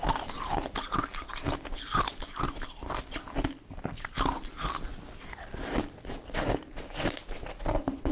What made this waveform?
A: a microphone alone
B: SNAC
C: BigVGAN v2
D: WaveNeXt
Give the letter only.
A